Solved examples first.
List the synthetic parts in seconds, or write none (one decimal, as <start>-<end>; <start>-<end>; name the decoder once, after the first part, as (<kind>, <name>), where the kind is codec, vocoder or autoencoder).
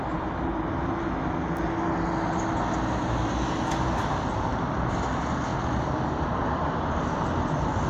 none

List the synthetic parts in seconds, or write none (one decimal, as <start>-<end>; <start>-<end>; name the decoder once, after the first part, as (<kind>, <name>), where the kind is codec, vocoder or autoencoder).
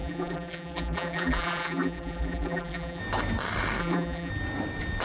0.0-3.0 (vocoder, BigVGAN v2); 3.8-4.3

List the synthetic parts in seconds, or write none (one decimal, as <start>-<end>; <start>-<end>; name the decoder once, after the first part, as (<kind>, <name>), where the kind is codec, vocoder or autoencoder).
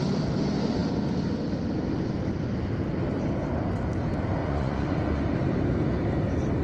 4.4-5.2 (vocoder, Vocos)